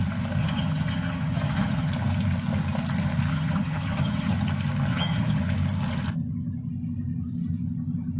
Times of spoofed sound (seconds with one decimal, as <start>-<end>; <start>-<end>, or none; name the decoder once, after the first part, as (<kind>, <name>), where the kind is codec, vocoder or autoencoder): 0.4-1.9 (vocoder, HiFi-GAN); 3.3-4.3; 4.9-5.4